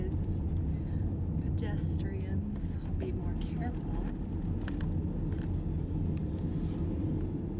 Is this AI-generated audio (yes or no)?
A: no